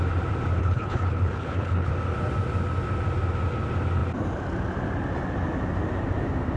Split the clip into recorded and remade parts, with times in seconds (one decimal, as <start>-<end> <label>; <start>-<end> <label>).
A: 0.0-0.6 recorded; 0.6-1.9 remade; 1.9-6.6 recorded